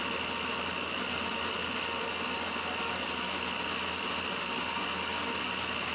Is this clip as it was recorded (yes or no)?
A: yes